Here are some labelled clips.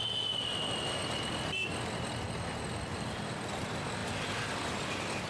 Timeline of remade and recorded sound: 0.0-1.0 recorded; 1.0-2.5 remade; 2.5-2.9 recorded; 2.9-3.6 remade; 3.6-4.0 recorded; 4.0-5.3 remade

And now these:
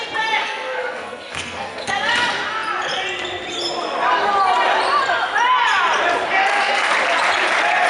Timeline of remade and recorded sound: 0.0-0.4 recorded; 0.4-1.9 remade; 1.9-7.9 recorded